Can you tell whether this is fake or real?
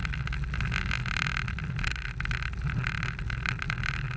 real